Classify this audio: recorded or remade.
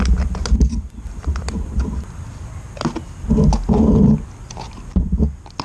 recorded